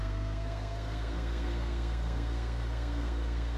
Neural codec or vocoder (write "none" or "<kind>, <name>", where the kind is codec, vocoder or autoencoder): codec, SNAC